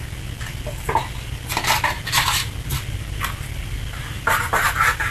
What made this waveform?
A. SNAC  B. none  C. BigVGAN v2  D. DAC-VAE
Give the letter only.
B